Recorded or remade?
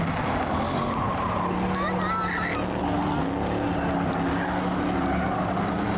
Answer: recorded